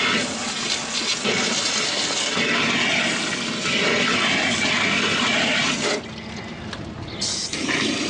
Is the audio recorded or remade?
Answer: recorded